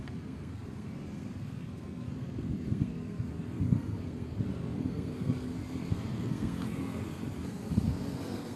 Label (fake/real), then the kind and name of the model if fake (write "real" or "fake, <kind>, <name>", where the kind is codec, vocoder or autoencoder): fake, codec, SNAC